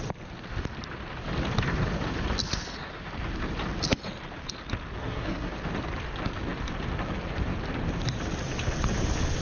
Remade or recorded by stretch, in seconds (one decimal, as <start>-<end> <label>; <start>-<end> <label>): 0.0-5.0 recorded; 5.0-5.5 remade; 5.5-9.4 recorded